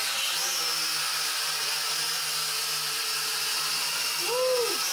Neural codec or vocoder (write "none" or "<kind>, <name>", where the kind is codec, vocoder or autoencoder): none